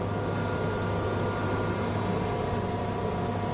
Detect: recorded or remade recorded